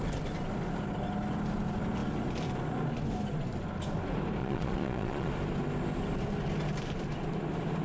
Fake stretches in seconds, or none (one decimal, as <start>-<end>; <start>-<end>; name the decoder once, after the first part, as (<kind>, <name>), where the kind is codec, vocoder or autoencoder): 4.4-5.3 (vocoder, Vocos)